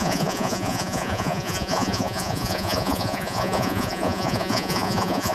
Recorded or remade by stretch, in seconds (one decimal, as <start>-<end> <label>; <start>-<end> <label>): 0.0-5.3 remade